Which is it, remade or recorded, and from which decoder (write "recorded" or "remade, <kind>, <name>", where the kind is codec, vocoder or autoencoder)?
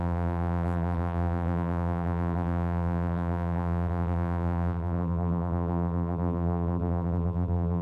remade, vocoder, BigVGAN v2